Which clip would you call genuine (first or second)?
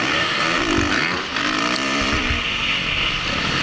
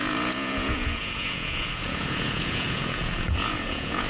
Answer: first